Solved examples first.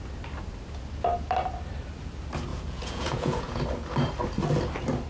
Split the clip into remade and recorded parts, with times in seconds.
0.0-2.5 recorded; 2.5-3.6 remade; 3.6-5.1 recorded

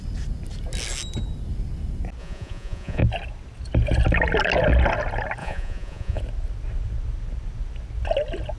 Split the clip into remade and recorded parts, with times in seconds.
0.0-2.2 recorded; 2.2-3.0 remade; 3.0-5.4 recorded; 5.4-6.2 remade; 6.2-8.6 recorded

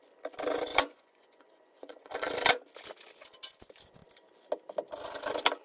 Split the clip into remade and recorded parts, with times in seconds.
0.0-0.7 recorded; 0.7-2.3 remade; 2.3-5.6 recorded

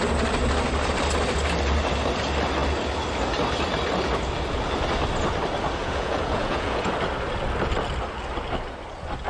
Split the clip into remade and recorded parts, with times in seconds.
0.0-5.8 recorded; 5.8-6.9 remade; 6.9-9.3 recorded

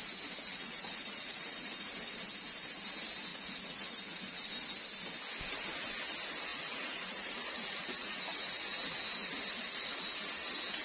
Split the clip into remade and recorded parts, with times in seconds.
0.0-0.5 recorded; 0.5-1.9 remade; 1.9-3.3 recorded; 3.3-4.4 remade; 4.4-6.5 recorded; 6.5-8.6 remade; 8.6-10.8 recorded

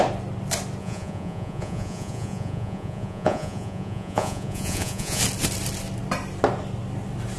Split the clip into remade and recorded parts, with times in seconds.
0.0-0.8 recorded; 0.8-5.2 remade; 5.2-7.4 recorded

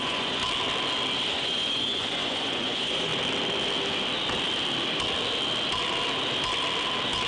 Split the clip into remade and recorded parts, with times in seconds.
0.0-0.4 remade; 0.4-1.3 recorded; 1.3-3.1 remade; 3.1-7.3 recorded